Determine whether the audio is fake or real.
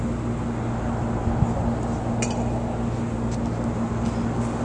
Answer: real